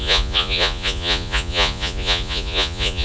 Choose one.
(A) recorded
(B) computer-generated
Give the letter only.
B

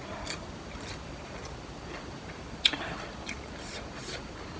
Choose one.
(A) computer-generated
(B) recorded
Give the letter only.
B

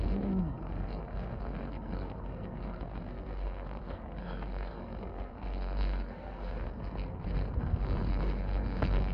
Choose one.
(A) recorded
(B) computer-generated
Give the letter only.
B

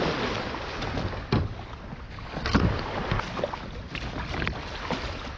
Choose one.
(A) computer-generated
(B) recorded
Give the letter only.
B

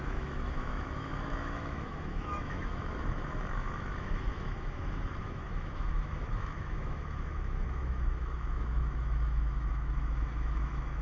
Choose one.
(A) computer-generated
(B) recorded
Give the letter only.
A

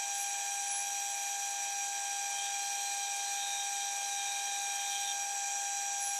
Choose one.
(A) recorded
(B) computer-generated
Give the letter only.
A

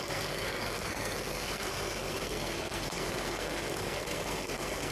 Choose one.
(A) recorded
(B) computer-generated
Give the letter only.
B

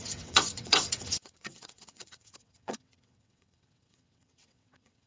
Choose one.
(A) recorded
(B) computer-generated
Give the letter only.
B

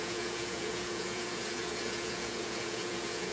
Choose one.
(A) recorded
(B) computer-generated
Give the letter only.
B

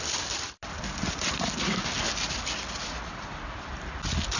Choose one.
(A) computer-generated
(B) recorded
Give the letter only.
B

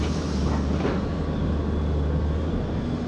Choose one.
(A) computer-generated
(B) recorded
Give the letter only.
B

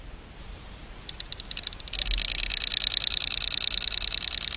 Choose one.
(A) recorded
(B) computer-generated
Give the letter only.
A